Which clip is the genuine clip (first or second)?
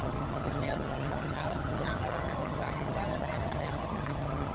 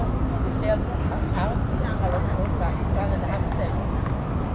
second